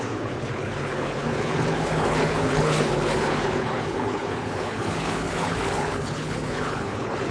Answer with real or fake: fake